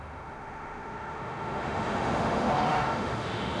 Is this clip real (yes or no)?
no